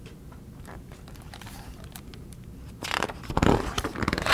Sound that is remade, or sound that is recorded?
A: remade